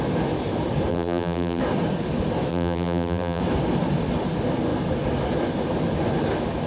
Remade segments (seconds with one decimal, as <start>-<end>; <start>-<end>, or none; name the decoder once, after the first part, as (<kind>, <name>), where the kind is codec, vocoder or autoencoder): 0.9-1.6 (vocoder, BigVGAN v2); 2.5-3.4